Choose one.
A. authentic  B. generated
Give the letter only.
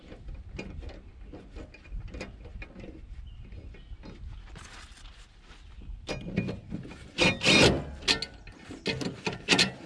A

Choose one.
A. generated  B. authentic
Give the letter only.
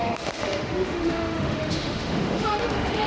A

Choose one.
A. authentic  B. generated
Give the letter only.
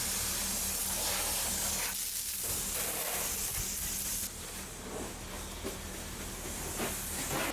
A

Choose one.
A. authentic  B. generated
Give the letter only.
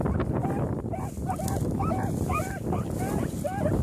A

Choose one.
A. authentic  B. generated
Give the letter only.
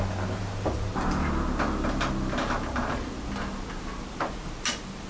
A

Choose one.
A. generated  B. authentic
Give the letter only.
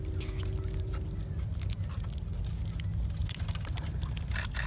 B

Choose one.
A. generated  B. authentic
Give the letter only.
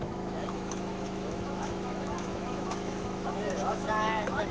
A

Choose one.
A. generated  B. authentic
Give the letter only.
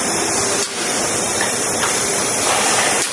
B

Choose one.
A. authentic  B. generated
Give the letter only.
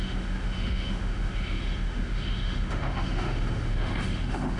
B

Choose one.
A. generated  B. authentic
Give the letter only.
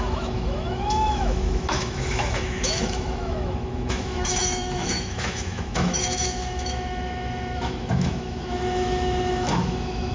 A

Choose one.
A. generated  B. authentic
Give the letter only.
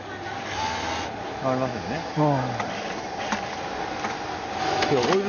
B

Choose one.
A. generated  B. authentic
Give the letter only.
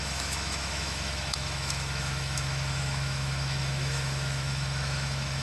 A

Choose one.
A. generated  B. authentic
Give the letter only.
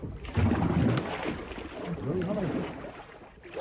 B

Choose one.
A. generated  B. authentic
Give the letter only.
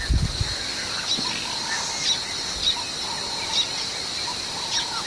B